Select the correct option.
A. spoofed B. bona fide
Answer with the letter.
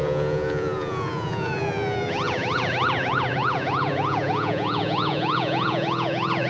A